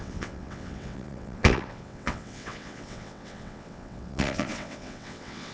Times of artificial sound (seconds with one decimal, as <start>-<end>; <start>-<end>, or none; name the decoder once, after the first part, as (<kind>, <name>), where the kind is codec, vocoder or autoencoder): 0.0-5.5 (vocoder, WaveNeXt)